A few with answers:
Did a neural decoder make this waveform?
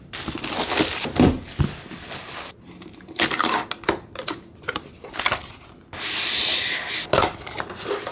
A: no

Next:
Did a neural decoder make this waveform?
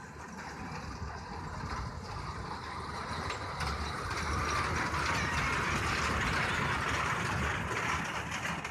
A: no